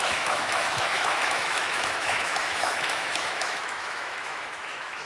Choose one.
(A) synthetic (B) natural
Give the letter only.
A